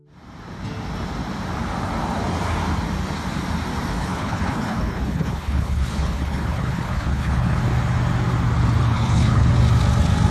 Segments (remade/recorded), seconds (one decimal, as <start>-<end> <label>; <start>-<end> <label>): 0.0-4.0 recorded; 4.0-7.6 remade; 7.6-8.8 recorded; 8.8-9.5 remade; 9.5-10.3 recorded

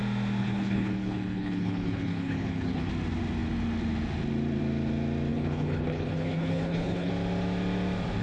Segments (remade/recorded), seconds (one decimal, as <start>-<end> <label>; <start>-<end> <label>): 0.0-0.4 recorded; 0.4-2.9 remade; 2.9-5.3 recorded; 5.3-7.1 remade; 7.1-8.2 recorded

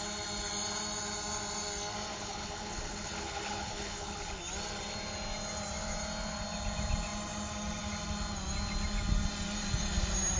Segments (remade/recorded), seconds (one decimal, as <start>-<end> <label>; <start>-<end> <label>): 0.0-2.1 recorded; 2.1-4.4 remade; 4.4-10.4 recorded

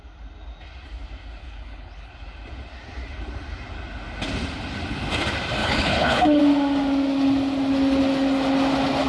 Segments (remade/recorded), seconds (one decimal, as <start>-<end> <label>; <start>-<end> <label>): 0.0-1.4 recorded; 1.4-2.1 remade; 2.1-5.6 recorded; 5.6-6.4 remade; 6.4-9.1 recorded